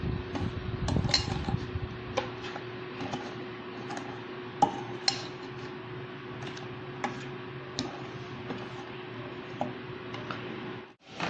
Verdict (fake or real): real